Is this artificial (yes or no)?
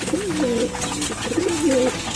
no